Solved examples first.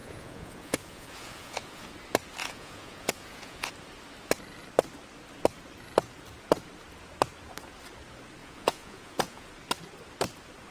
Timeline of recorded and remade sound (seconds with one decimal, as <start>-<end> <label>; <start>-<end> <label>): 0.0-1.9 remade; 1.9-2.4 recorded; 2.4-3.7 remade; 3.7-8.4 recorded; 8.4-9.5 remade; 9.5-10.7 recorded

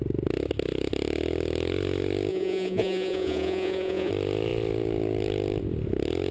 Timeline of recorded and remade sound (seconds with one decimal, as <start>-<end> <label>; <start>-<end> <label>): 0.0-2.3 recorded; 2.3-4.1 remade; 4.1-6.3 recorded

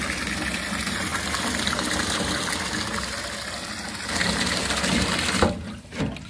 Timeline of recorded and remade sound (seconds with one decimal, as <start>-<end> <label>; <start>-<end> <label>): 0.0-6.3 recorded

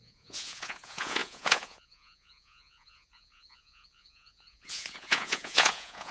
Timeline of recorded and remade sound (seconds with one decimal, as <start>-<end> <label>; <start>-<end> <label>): 0.0-6.1 remade

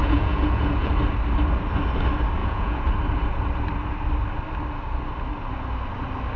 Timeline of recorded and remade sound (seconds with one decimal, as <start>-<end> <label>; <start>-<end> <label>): 0.0-0.9 remade; 0.9-2.4 recorded; 2.4-2.9 remade; 2.9-6.4 recorded

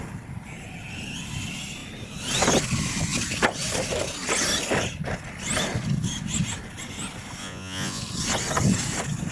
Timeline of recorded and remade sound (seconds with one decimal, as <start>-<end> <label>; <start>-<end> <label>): 0.0-7.4 recorded; 7.4-8.0 remade; 8.0-9.3 recorded

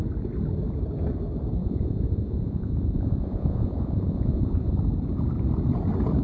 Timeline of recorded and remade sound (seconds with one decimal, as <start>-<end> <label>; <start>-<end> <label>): 0.0-1.6 recorded; 1.6-4.8 remade; 4.8-6.2 recorded

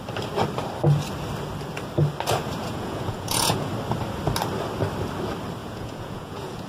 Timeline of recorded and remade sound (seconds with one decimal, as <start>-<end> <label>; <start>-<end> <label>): 0.0-2.6 recorded; 2.6-3.7 remade; 3.7-5.6 recorded; 5.6-6.7 remade